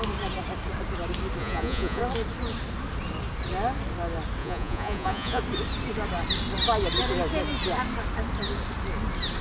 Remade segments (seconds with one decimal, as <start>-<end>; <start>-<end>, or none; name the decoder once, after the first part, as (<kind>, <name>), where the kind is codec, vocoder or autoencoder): 1.4-2.0 (vocoder, Vocos); 4.4-5.4